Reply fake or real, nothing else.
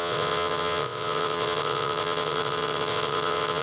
fake